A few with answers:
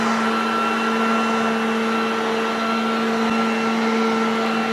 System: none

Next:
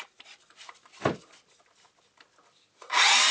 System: none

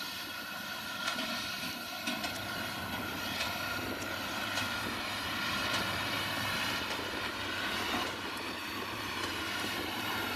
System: vocoder, BigVGAN v2